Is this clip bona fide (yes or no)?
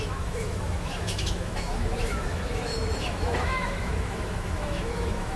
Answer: no